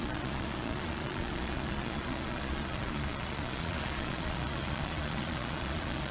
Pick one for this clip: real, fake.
fake